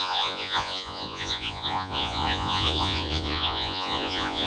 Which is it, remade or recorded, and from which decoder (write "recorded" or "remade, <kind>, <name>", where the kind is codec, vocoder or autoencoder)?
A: remade, vocoder, Vocos